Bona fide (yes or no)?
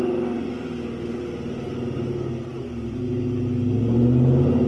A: yes